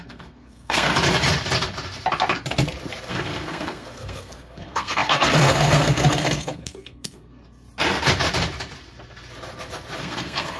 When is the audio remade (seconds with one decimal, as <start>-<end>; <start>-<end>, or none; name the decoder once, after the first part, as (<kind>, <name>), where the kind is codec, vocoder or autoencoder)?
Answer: 0.0-0.9 (codec, SNAC); 3.1-7.4; 10.0-10.6